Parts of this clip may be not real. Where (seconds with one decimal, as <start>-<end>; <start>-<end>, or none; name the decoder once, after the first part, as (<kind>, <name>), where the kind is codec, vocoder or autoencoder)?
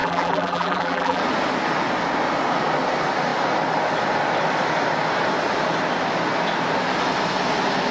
0.0-1.2 (vocoder, BigVGAN v2)